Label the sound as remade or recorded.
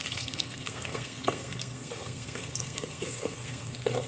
remade